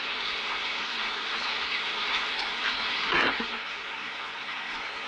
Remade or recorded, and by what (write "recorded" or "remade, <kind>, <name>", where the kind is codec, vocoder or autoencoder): remade, codec, SNAC